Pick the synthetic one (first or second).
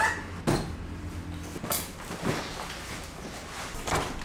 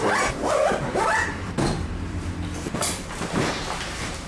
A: second